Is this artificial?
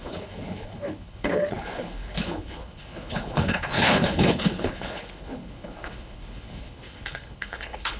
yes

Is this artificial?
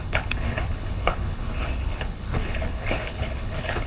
yes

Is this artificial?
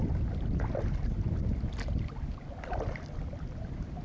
no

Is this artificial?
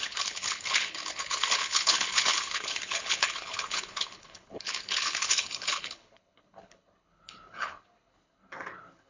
yes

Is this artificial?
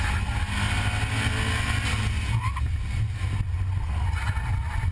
no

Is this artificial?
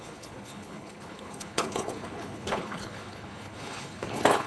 yes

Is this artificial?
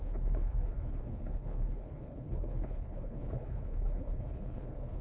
yes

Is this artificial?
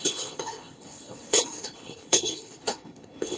yes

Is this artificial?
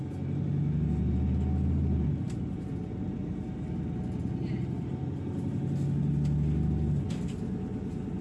no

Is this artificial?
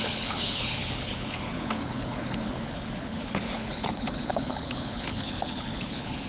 yes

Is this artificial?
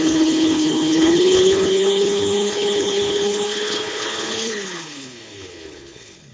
yes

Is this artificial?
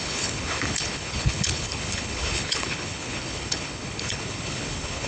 yes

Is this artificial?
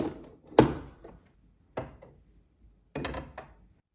no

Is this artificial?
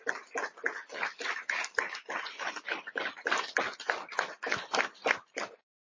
no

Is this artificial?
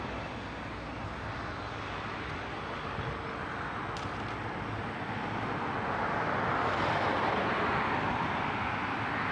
no